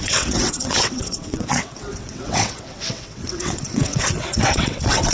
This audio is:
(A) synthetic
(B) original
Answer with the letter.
A